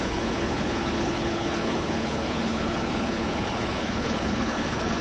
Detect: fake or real fake